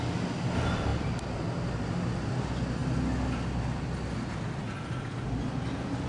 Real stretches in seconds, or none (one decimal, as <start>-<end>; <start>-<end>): 0.0-6.1